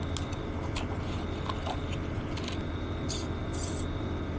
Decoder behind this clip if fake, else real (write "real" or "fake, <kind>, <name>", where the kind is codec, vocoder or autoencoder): real